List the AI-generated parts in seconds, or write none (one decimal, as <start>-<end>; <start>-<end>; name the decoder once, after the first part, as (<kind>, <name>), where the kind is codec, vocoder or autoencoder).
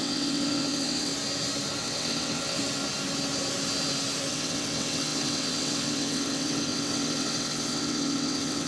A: 0.0-1.1 (vocoder, WaveNeXt); 1.8-2.6; 4.3-8.7